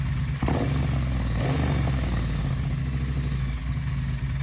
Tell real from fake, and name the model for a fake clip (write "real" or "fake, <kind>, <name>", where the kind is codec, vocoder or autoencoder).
real